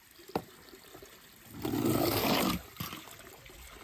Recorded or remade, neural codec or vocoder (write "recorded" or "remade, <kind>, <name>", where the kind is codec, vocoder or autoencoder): recorded